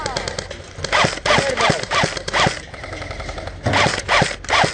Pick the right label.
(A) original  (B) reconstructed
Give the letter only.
A